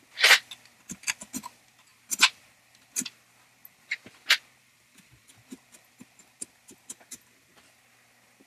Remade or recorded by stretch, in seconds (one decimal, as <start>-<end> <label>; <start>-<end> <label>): 0.0-1.9 recorded; 1.9-2.9 remade; 2.9-3.7 recorded; 3.7-6.2 remade; 6.2-8.5 recorded